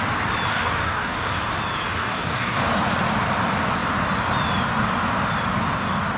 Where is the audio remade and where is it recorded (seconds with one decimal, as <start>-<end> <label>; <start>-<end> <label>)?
0.0-0.5 recorded; 0.5-1.3 remade; 1.3-2.0 recorded; 2.0-2.6 remade; 2.6-6.2 recorded